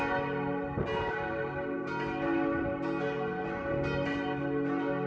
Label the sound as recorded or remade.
recorded